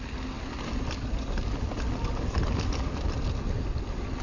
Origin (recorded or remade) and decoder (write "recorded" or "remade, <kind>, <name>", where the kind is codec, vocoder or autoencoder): recorded